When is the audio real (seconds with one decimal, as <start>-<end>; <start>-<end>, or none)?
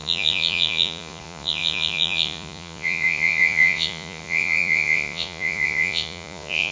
none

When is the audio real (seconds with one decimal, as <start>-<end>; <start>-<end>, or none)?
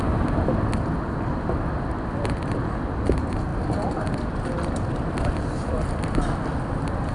3.5-4.2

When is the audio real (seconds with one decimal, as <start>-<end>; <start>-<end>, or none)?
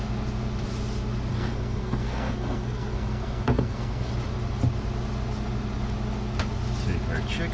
0.0-1.3; 4.1-7.5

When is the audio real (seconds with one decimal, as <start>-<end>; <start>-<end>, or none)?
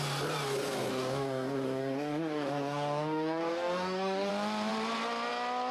0.0-0.9; 4.3-5.7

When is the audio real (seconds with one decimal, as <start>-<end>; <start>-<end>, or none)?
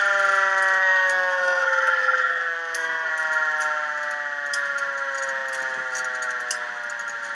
0.0-0.8; 3.1-7.3